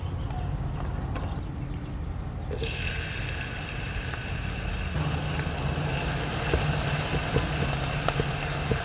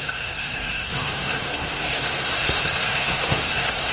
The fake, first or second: second